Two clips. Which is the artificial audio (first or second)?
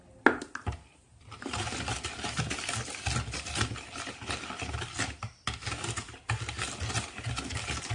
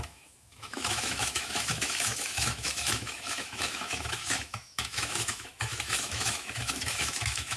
second